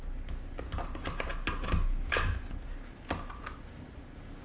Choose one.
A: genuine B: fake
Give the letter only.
A